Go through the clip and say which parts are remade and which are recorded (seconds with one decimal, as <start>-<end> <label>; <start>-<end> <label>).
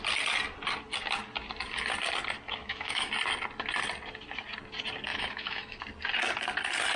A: 0.0-2.6 recorded; 2.6-3.1 remade; 3.1-5.1 recorded; 5.1-5.8 remade; 5.8-7.0 recorded